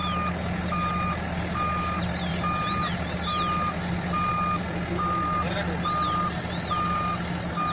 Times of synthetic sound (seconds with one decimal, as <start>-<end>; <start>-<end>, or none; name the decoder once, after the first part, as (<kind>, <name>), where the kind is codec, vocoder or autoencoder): none

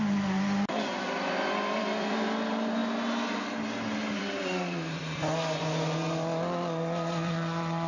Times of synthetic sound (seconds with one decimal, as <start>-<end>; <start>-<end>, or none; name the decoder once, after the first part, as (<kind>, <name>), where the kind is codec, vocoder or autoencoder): 0.0-2.8 (vocoder, BigVGAN v2); 4.2-5.0; 5.6-7.9

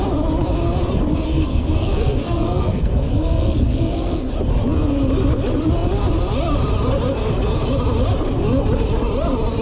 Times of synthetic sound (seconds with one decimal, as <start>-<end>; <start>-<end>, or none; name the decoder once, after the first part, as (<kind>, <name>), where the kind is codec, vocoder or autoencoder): 1.3-4.3 (codec, SNAC)

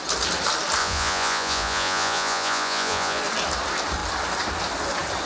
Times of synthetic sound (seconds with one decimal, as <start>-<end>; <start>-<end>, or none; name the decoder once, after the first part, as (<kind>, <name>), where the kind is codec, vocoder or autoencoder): 0.8-3.2 (vocoder, Vocos)

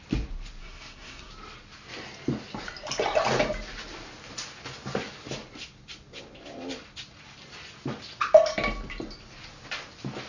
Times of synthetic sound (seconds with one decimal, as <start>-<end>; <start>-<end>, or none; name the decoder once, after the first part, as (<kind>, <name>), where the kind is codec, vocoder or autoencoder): 0.6-1.3 (codec, SNAC)